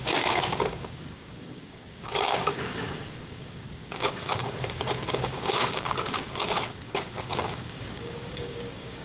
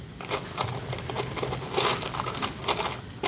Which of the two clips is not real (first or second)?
first